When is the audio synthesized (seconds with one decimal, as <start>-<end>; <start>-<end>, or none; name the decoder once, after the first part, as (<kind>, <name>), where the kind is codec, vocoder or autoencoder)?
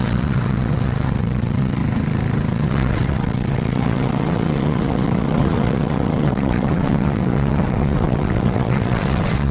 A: 0.0-1.8 (vocoder, WaveNeXt); 2.5-9.5